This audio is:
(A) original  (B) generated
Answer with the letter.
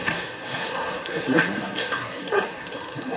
B